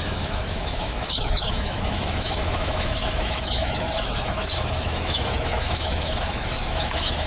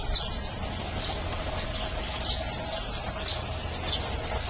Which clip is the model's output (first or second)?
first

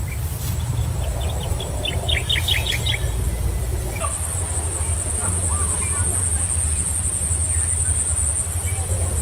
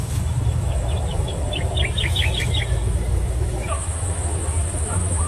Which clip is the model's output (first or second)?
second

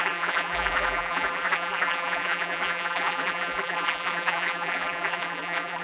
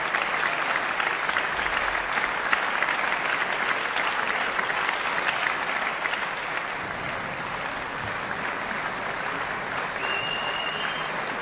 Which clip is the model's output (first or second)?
first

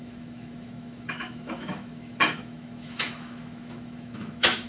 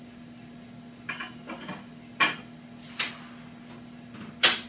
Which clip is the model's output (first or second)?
first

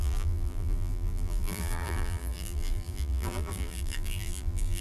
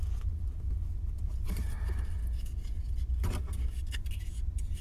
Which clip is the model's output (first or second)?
first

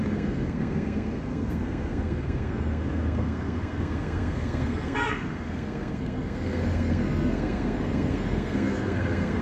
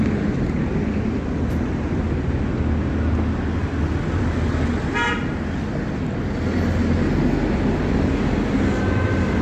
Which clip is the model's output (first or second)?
first